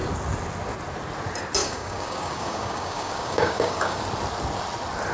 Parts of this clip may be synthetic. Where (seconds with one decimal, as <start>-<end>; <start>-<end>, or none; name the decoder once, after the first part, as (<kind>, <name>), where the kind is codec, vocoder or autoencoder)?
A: 1.6-4.0 (codec, DAC)